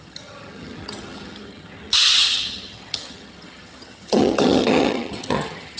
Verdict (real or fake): fake